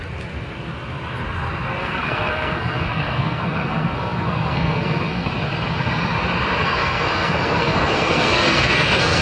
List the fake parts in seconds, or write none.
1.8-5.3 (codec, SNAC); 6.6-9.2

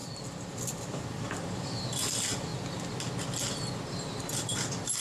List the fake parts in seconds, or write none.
0.0-2.5 (vocoder, BigVGAN v2); 3.9-5.0

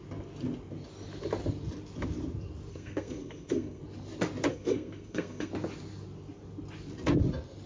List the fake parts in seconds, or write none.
2.7-3.8 (codec, SNAC); 4.5-5.5

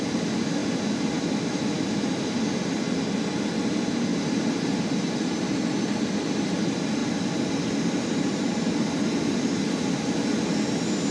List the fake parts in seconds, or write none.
4.1-5.3 (vocoder, BigVGAN v2)

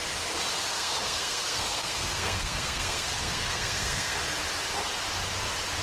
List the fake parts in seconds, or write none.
0.7-4.2 (codec, SNAC)

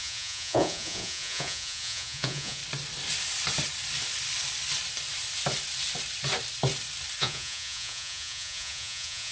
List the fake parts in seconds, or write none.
0.0-2.6 (vocoder, Vocos); 7.2-9.3

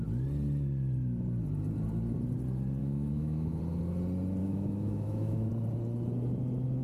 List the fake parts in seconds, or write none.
2.8-3.6 (autoencoder, DAC-VAE); 4.4-5.5